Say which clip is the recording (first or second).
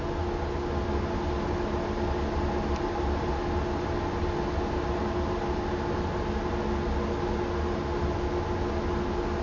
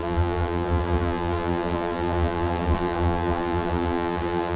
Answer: first